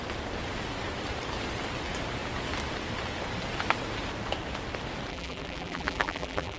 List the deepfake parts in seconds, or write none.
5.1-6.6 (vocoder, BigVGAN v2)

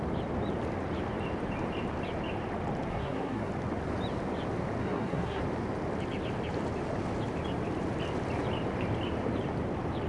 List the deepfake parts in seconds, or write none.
2.9-3.5 (codec, SNAC); 4.8-5.4

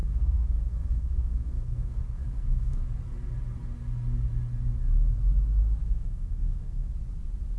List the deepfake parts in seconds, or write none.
0.0-2.8 (codec, SNAC); 5.8-6.9

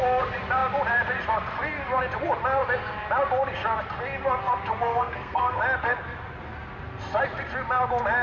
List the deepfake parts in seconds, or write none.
4.9-5.6 (codec, SNAC)

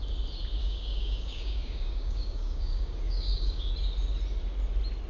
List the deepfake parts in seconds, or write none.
0.6-3.7 (codec, DAC)